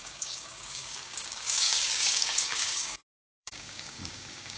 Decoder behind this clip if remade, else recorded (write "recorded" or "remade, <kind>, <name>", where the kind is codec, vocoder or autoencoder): remade, codec, DAC